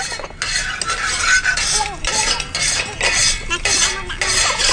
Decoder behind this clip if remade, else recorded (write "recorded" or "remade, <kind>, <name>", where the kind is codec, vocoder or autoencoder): recorded